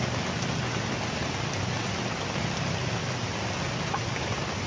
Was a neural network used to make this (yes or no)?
no